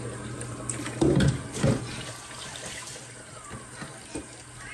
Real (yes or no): yes